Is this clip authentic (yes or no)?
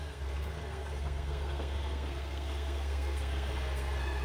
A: no